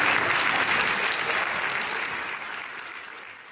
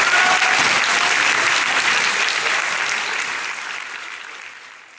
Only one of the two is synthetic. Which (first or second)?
second